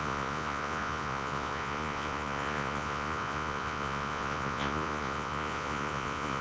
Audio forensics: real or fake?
fake